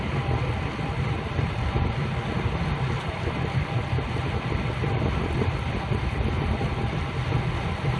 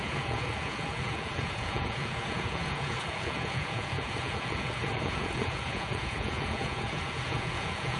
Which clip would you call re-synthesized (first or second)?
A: second